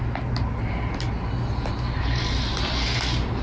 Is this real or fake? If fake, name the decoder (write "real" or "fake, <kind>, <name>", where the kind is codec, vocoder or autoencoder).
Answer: real